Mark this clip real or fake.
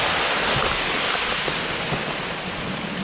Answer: real